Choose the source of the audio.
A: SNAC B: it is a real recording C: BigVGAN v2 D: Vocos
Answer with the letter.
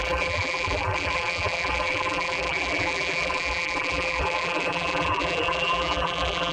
C